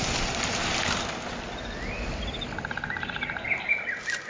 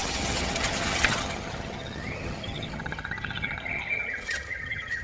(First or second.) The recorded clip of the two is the first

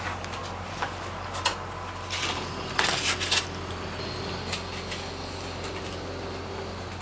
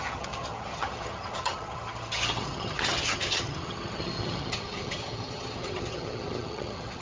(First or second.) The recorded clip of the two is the first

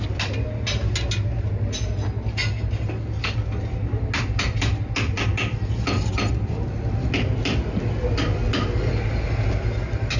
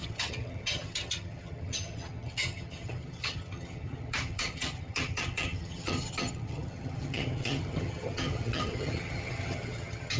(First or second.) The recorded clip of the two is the first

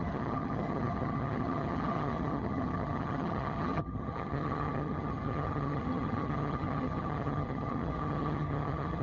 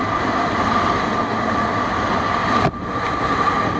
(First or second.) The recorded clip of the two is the second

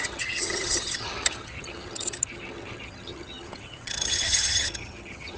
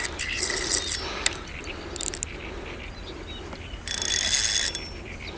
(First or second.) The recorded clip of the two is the second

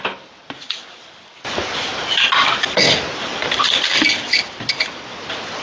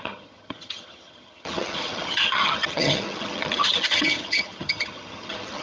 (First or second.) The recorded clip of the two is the first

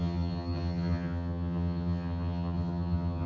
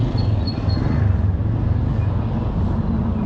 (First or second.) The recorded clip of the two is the second